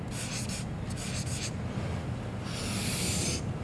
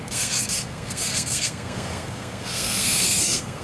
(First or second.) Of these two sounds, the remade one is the second